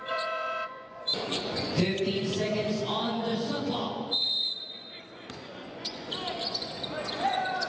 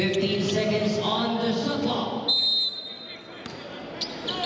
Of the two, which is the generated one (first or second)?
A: first